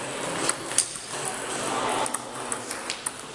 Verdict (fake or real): real